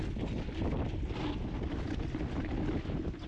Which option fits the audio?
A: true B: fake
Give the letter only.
A